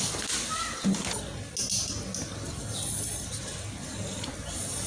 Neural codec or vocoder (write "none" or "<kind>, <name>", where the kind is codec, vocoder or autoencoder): none